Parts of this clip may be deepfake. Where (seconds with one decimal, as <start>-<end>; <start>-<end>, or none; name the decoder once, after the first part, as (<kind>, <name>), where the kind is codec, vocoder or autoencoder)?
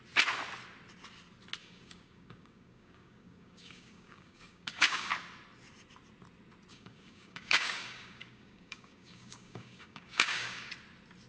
1.6-5.1 (codec, DAC); 6.7-10.7